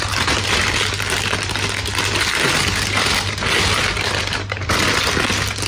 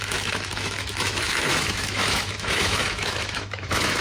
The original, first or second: first